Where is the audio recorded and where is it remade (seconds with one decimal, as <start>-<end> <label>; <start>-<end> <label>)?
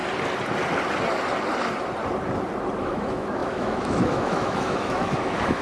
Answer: 0.0-2.8 recorded; 2.8-5.6 remade